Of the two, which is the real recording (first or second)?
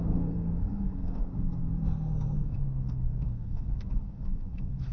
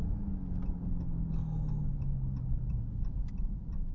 second